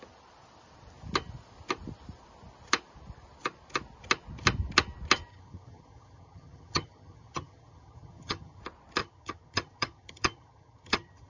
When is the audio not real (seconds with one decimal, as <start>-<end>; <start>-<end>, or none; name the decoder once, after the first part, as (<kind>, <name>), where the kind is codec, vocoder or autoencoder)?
5.3-8.6 (vocoder, HiFi-GAN); 9.0-11.3